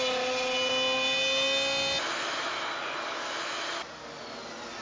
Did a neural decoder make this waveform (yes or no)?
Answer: no